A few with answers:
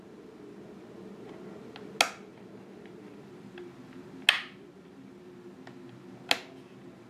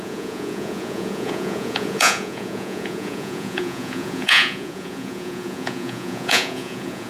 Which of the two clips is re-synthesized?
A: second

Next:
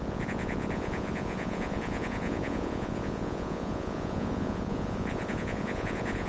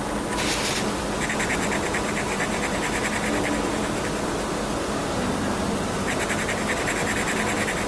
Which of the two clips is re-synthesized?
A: first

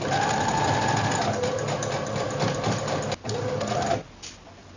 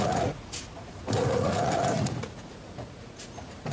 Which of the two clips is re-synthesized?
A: second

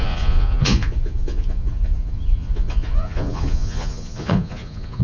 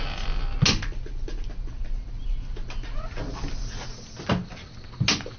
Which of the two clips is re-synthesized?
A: first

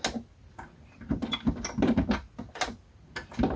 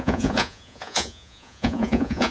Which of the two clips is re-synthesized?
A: second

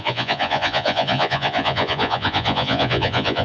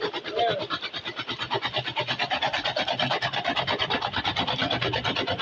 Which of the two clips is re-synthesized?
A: first